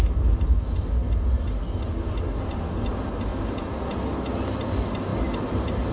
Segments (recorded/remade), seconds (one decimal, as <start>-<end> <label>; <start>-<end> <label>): 0.0-5.9 recorded